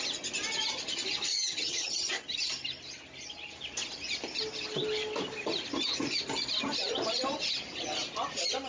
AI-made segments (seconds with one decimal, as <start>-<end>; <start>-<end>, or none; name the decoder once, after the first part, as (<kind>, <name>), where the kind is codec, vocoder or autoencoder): 1.3-2.1 (vocoder, HiFi-GAN)